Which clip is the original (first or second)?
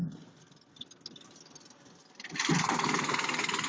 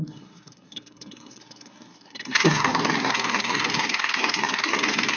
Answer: first